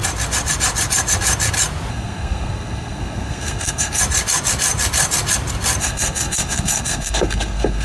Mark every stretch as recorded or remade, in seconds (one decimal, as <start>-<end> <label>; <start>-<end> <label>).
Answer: 0.0-1.9 recorded; 1.9-4.0 remade; 4.0-5.8 recorded; 5.8-7.8 remade